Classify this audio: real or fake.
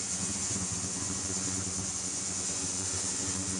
fake